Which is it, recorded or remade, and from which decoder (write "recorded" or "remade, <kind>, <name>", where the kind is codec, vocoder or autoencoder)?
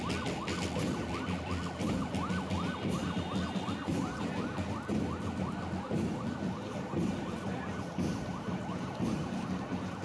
recorded